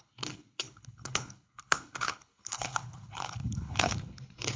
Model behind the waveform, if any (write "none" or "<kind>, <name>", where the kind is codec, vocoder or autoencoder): codec, HILCodec